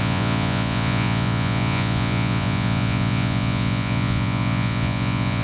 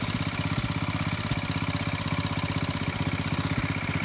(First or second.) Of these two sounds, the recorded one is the second